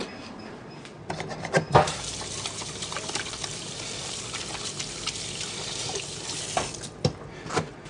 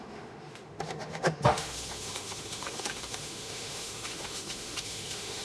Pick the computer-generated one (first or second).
second